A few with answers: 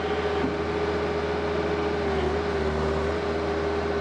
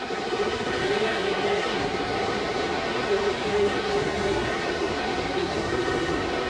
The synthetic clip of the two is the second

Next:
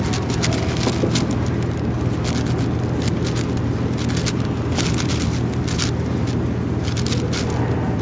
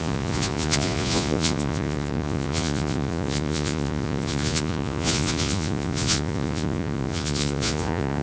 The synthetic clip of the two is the second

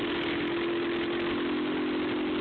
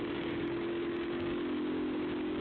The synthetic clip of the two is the second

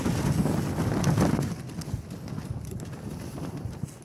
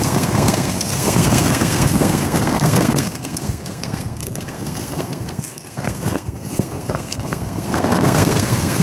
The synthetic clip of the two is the second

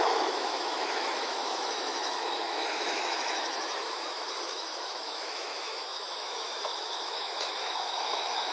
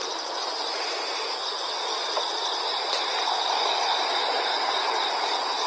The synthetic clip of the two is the first